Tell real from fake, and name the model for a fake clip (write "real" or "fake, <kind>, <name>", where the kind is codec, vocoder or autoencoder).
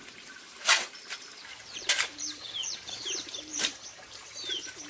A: fake, vocoder, BigVGAN v2